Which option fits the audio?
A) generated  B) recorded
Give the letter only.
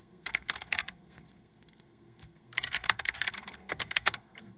A